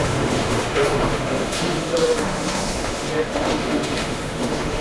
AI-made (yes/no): yes